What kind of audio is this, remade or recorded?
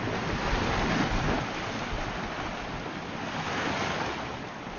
recorded